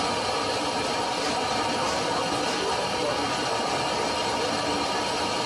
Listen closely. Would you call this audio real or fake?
real